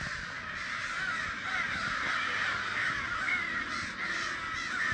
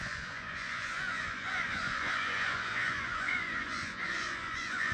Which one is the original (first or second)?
first